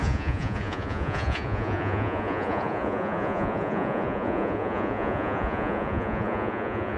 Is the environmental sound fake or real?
fake